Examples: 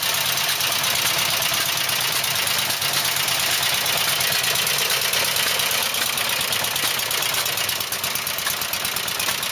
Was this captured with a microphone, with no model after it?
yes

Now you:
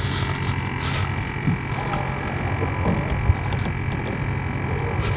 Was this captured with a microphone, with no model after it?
yes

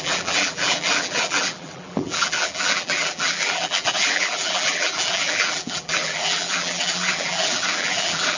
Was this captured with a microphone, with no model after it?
no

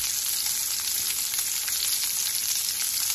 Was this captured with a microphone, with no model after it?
yes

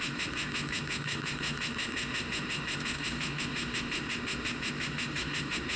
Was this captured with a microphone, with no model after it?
no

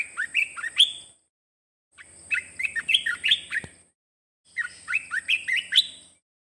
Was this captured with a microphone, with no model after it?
yes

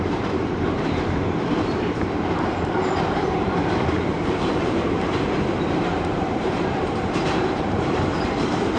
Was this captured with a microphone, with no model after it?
no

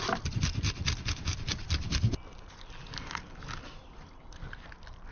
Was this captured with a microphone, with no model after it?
yes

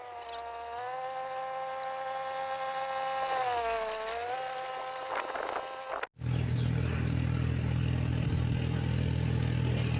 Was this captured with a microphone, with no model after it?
yes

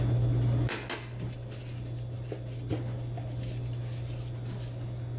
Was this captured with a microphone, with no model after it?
yes